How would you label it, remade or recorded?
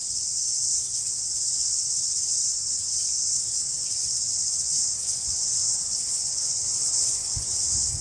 remade